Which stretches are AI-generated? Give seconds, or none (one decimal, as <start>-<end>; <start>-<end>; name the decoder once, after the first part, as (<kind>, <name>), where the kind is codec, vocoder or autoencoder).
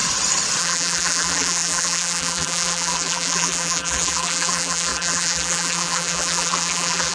0.6-7.1 (vocoder, BigVGAN v2)